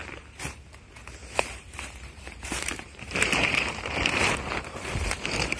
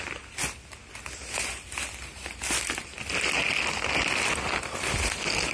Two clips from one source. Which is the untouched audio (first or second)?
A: second